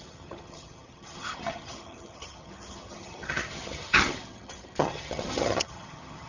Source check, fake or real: fake